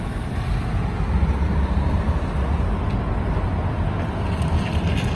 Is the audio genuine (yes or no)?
yes